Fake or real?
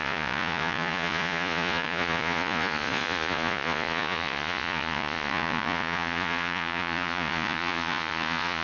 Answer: fake